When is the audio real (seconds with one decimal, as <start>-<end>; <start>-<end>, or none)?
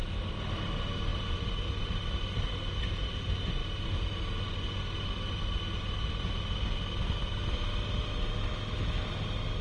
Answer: 0.0-9.6